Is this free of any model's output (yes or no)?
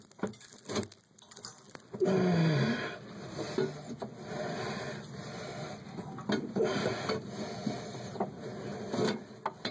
yes